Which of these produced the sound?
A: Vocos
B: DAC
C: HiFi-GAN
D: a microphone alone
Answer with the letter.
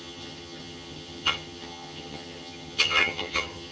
C